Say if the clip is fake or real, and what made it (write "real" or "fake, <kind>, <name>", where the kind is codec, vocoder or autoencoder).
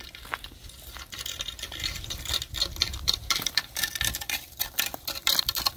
fake, vocoder, BigVGAN v2